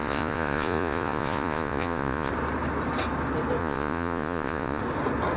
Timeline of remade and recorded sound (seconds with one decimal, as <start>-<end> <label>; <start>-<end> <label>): 0.0-2.3 remade; 2.3-3.6 recorded; 3.6-4.8 remade; 4.8-5.4 recorded